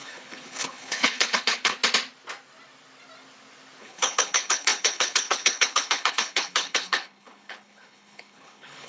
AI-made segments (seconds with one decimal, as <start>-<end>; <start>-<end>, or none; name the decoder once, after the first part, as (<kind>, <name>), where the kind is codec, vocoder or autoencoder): 0.0-1.8 (codec, HILCodec); 3.8-8.9